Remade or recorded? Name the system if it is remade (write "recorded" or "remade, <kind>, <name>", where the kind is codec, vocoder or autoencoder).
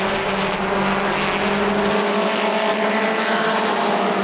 recorded